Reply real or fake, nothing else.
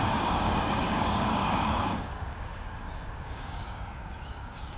fake